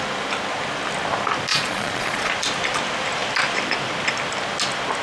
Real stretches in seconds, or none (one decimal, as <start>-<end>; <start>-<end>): 0.0-1.5; 2.3-5.0